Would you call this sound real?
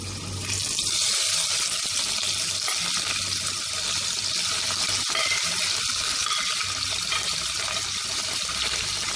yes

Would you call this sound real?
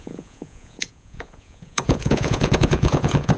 no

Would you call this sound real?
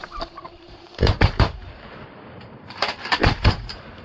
no